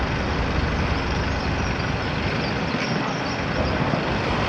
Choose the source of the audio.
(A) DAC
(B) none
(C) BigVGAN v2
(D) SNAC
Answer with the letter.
B